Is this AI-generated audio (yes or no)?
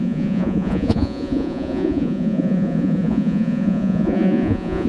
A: yes